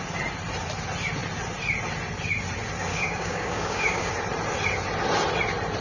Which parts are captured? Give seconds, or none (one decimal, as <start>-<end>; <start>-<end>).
0.0-2.9; 4.1-5.8